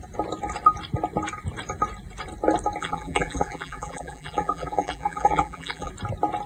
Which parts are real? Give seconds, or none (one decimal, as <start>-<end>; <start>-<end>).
0.0-2.8; 5.9-6.5